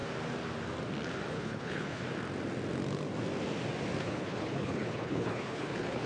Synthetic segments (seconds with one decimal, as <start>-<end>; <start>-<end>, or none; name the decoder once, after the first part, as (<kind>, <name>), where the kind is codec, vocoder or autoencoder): 1.3-2.0 (codec, HILCodec); 4.0-6.1